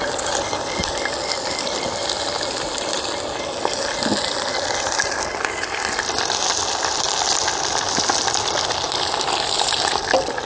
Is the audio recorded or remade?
recorded